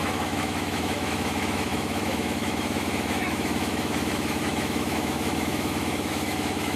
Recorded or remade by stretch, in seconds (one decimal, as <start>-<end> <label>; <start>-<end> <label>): 0.0-6.8 remade